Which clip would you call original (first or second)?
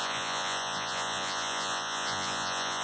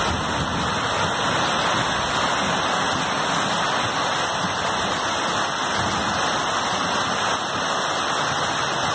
second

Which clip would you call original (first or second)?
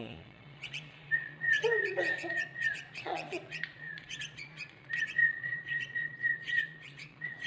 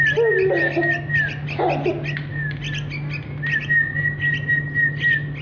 second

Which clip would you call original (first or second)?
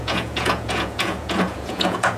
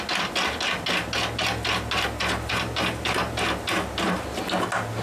second